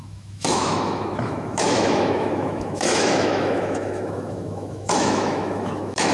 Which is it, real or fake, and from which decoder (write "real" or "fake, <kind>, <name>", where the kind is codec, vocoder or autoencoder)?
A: fake, autoencoder, DAC-VAE